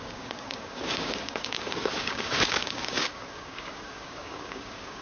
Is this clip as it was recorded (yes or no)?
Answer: no